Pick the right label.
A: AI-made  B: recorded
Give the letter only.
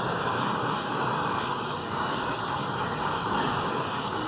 A